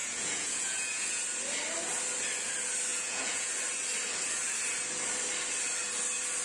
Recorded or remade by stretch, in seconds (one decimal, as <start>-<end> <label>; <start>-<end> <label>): 0.0-1.2 remade; 1.2-2.9 recorded; 2.9-3.5 remade; 3.5-6.4 recorded